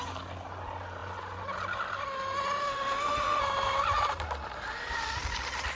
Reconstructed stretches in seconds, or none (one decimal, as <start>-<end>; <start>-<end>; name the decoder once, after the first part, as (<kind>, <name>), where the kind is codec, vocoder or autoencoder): 2.6-3.4 (autoencoder, DAC-VAE)